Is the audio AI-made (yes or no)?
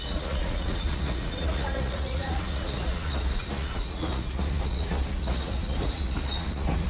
yes